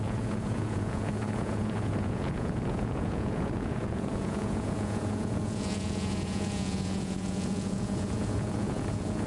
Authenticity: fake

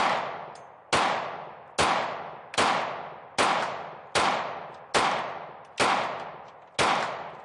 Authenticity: real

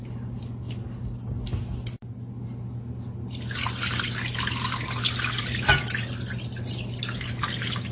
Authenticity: real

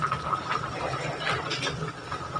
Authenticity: real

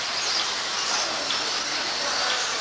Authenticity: real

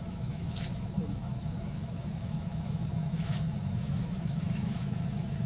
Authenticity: fake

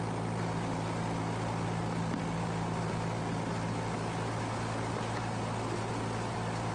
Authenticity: real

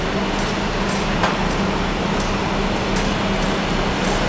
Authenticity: real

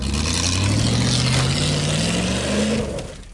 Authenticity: real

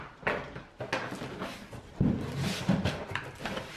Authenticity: real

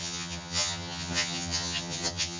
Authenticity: fake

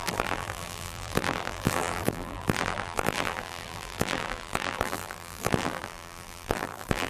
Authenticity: fake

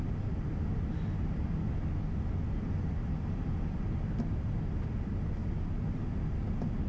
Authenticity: real